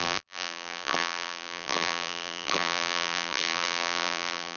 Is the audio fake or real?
fake